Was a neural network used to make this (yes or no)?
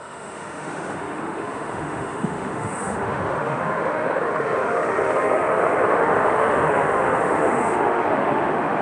yes